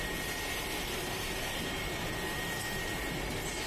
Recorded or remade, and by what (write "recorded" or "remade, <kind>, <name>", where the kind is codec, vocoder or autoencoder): recorded